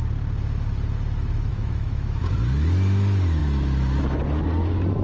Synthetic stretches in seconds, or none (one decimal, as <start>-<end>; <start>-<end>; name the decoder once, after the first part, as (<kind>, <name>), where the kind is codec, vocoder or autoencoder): 1.5-2.2 (autoencoder, DAC-VAE)